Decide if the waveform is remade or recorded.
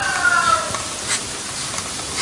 recorded